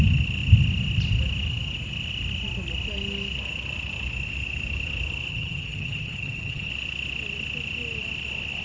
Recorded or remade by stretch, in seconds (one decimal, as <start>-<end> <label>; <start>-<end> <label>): 0.0-5.3 recorded; 5.3-6.7 remade; 6.7-8.6 recorded